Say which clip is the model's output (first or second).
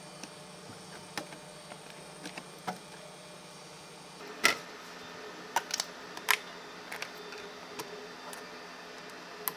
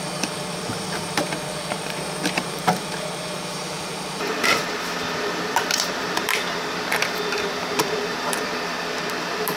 second